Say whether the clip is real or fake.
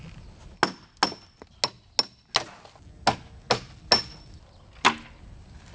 real